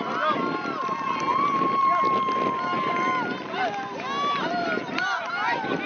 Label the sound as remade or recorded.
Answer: recorded